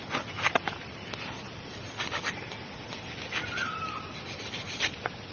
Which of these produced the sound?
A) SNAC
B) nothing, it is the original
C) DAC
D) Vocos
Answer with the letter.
B